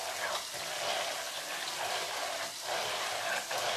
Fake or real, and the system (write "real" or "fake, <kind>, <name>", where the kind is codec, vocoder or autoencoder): real